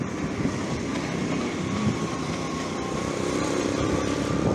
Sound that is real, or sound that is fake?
fake